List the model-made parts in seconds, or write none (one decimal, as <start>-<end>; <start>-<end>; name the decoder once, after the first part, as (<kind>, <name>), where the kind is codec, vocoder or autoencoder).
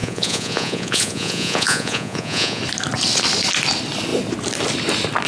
0.0-2.6 (vocoder, Vocos)